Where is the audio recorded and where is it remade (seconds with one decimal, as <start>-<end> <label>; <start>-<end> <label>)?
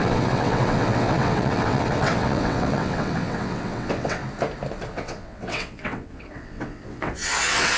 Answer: 0.0-4.2 remade; 4.2-4.9 recorded; 4.9-7.8 remade